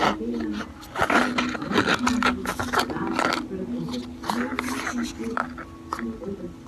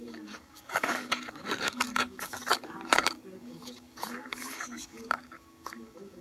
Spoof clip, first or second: second